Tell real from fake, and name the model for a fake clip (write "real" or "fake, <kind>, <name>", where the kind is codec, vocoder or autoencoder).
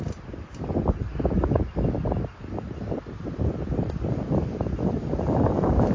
real